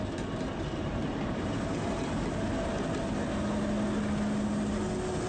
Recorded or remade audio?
recorded